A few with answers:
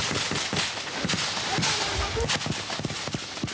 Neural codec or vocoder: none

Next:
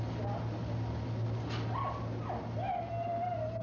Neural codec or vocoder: none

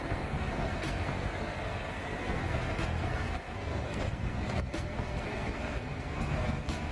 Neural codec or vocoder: codec, SNAC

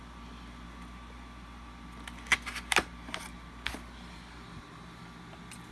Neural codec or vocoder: none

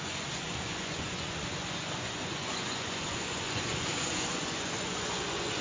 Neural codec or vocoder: vocoder, Vocos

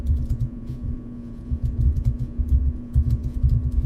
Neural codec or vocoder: vocoder, Vocos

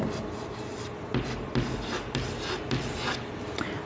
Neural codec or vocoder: vocoder, BigVGAN v2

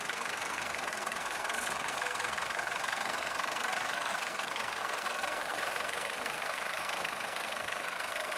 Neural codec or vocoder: codec, SNAC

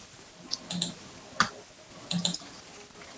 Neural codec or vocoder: none